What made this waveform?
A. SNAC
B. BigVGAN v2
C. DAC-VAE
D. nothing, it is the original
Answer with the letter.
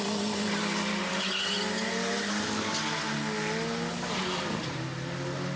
D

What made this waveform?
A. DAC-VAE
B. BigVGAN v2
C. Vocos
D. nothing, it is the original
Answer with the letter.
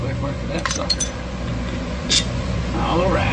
C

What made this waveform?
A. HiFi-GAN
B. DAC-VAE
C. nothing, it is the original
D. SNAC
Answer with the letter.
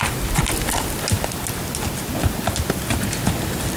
C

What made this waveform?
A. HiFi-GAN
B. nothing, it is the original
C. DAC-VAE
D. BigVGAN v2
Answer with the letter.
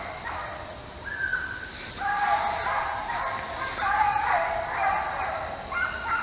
B